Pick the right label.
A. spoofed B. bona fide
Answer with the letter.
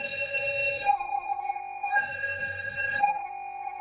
A